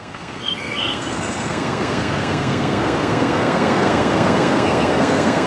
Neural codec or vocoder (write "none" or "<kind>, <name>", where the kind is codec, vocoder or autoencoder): codec, SNAC